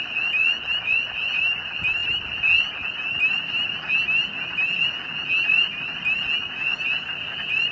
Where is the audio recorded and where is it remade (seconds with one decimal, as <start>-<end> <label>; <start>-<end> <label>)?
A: 0.0-7.7 recorded